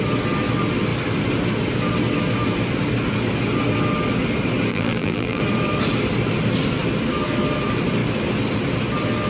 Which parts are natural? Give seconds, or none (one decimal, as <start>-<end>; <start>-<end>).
0.0-4.7; 5.4-9.3